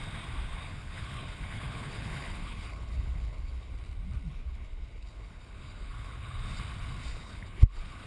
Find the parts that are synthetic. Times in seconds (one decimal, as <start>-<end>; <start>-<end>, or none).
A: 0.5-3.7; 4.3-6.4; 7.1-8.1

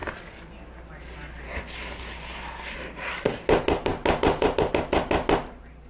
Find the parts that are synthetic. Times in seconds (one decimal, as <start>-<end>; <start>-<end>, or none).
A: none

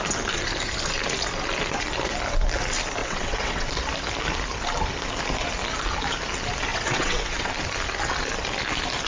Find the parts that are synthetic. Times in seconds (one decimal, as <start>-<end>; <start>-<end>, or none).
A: 3.0-3.7; 6.7-7.5